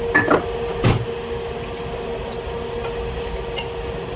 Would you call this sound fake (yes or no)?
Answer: no